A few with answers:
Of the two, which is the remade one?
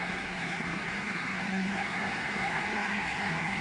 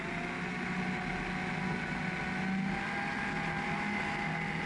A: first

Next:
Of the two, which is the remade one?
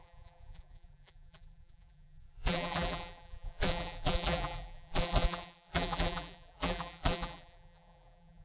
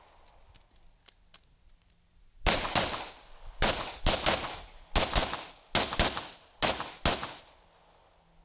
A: first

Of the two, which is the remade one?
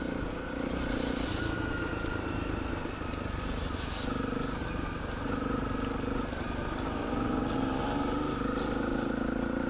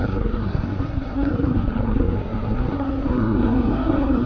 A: second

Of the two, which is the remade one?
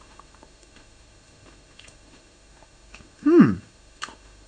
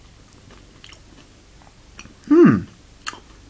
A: first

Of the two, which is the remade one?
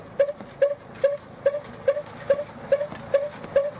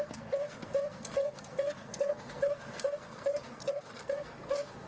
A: second